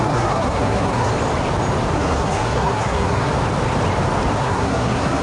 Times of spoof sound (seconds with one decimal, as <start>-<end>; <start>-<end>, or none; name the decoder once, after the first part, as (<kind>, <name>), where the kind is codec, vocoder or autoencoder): 0.0-1.1 (codec, SNAC); 1.9-3.3; 4.4-5.2